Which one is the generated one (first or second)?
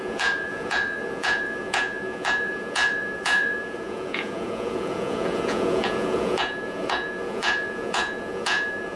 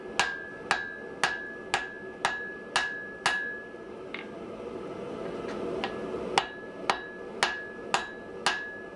first